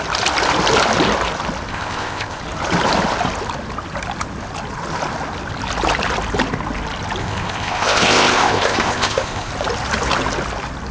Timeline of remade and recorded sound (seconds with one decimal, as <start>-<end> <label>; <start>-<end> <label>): 0.0-1.7 recorded; 1.7-2.4 remade; 2.4-7.2 recorded; 7.2-9.5 remade; 9.5-10.9 recorded